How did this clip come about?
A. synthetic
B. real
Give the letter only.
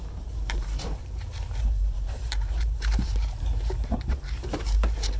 A